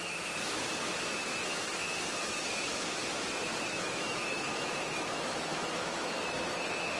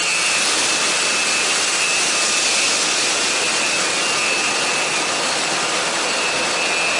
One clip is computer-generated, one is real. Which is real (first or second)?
second